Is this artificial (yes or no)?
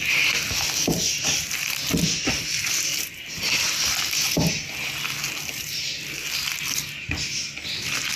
no